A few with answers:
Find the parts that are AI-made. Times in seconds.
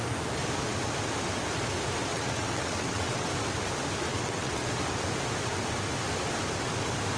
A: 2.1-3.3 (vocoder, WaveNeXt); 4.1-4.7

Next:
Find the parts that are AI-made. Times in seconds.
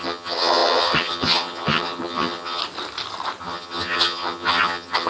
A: 0.0-2.6 (vocoder, HiFi-GAN); 3.4-5.1